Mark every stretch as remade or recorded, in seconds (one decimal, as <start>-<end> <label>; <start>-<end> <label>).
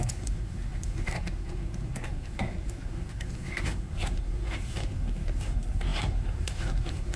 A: 0.0-7.2 remade